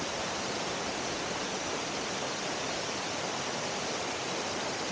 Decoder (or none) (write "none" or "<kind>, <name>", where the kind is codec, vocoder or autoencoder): vocoder, BigVGAN v2